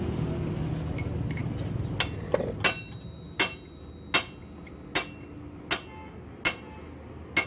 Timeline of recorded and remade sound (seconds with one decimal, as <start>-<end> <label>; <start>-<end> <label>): 0.0-7.5 recorded